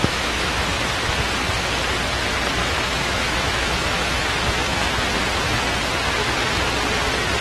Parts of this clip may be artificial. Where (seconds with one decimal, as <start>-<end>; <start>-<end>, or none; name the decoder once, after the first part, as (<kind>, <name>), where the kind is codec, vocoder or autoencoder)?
0.0-1.1 (autoencoder, DAC-VAE); 2.6-5.0